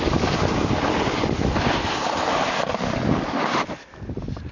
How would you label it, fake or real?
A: real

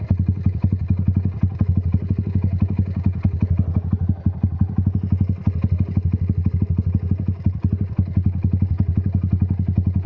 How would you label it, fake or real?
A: real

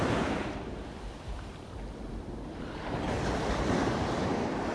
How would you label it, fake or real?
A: fake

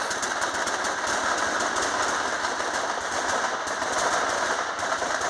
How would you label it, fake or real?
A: real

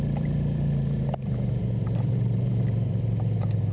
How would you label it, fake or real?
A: fake